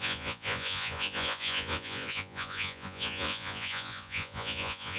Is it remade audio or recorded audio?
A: remade